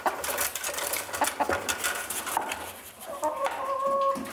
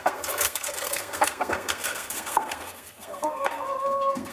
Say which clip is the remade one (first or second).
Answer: second